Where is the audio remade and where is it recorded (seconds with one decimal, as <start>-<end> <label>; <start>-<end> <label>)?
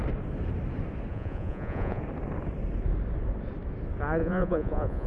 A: 0.0-1.1 recorded; 1.1-2.0 remade; 2.0-4.2 recorded; 4.2-5.1 remade